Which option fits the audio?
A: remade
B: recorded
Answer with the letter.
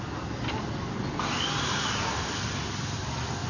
B